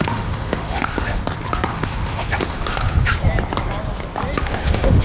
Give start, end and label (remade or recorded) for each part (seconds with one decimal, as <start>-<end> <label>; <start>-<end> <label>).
0.0-1.2 remade; 1.2-1.7 recorded; 1.7-3.1 remade; 3.1-4.4 recorded; 4.4-5.0 remade